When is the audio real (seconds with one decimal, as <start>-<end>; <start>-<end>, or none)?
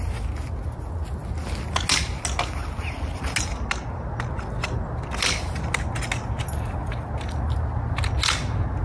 0.0-8.8